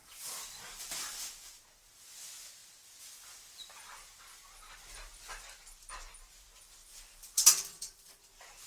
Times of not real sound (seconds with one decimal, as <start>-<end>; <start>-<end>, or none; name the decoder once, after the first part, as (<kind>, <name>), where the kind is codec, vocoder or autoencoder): 0.0-1.6 (vocoder, BigVGAN v2); 6.8-8.7